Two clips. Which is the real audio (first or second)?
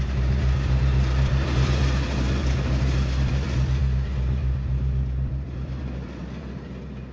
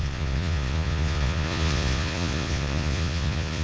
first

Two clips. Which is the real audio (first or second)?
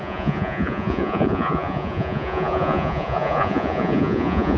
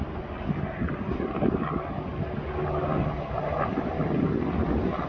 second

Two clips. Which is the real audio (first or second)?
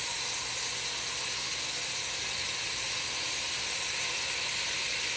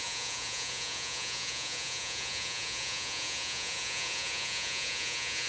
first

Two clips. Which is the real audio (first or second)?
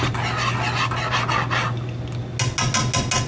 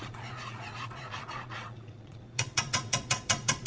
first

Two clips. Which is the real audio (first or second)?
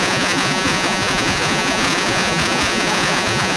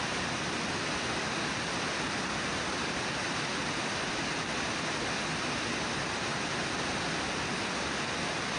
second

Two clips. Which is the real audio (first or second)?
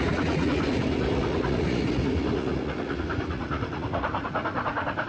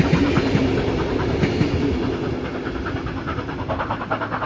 second